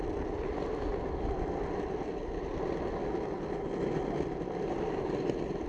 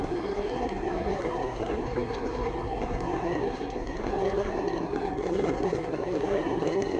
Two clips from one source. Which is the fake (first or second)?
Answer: second